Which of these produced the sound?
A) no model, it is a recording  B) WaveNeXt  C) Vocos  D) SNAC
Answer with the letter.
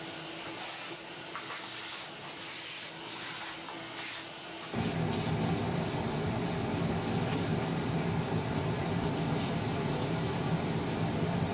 A